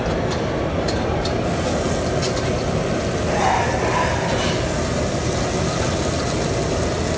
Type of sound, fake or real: real